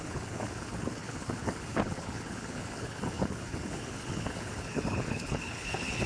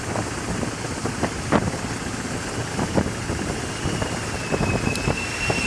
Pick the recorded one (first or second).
second